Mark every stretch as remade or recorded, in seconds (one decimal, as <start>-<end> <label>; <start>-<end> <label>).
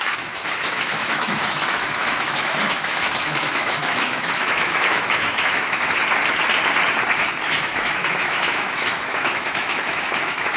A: 0.0-6.0 remade; 6.0-7.5 recorded; 7.5-10.6 remade